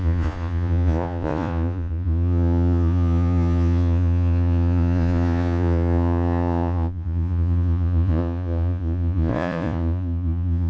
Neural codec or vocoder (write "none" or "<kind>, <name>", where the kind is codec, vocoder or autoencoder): vocoder, Vocos